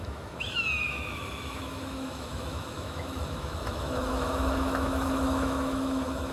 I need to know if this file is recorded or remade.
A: remade